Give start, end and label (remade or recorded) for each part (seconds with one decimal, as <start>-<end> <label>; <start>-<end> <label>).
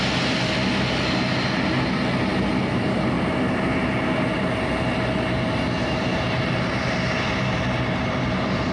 0.0-8.7 recorded